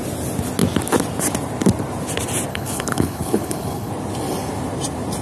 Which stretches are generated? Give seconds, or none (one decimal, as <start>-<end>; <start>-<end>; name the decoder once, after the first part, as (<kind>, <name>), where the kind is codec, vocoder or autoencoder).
2.5-3.9 (codec, HILCodec)